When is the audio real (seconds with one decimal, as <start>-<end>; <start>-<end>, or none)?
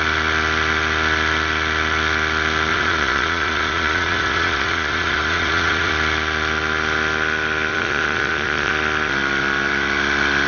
0.0-2.7; 5.9-7.7; 8.7-10.5